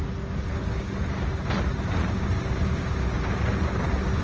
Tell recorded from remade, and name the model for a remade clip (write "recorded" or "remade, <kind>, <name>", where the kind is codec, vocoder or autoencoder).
recorded